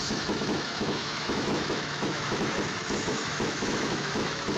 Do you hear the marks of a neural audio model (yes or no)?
yes